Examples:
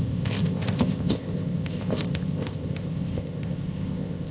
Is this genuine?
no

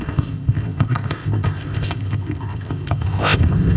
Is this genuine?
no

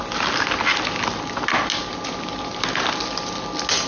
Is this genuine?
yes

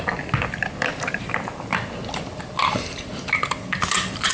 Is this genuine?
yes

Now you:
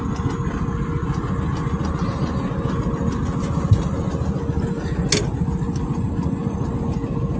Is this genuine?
yes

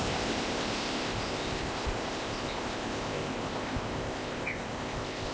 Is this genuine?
no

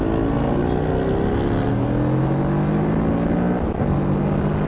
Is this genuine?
yes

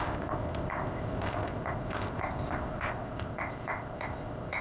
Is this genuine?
no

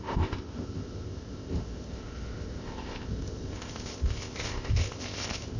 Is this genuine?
no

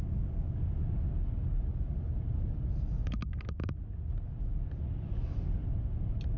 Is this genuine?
yes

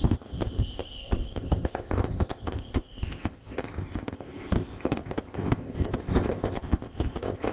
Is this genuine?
no